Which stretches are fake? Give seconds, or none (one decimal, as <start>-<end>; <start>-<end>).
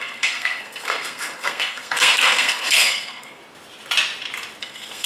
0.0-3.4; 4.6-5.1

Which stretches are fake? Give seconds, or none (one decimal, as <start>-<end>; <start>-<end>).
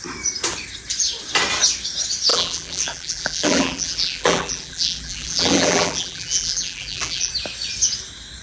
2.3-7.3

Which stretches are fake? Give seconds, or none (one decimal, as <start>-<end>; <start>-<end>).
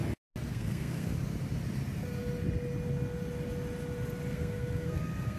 0.5-1.1; 4.3-5.4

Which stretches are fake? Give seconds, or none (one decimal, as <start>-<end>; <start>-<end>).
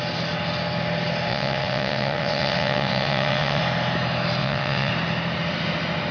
1.3-3.6; 4.4-4.9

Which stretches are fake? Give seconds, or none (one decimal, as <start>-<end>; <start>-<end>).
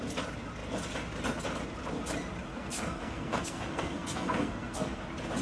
2.5-5.0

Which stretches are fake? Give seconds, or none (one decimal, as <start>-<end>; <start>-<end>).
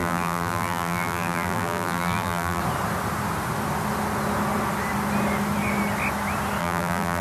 0.0-2.6; 6.6-7.2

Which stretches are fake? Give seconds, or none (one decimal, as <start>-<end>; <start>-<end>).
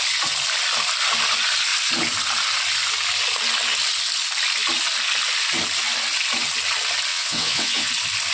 7.1-7.9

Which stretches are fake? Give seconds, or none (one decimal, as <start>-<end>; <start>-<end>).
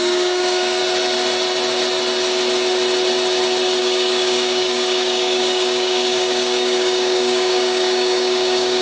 0.0-0.8; 3.8-8.8